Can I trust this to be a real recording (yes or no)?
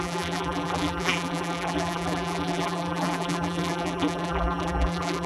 no